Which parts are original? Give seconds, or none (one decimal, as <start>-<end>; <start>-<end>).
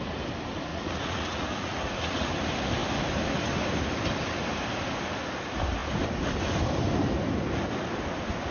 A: 0.0-0.7; 2.3-8.5